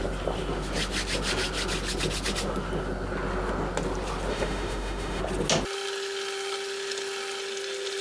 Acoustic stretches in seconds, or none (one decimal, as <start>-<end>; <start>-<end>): 0.0-4.3; 5.2-8.0